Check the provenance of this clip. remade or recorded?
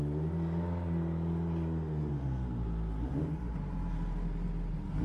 recorded